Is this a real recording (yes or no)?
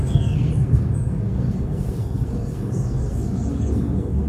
no